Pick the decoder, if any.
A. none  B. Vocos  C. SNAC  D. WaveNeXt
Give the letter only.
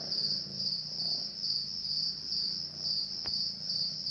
A